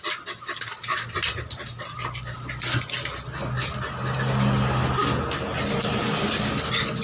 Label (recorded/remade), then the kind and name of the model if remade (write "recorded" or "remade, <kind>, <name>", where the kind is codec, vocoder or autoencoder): recorded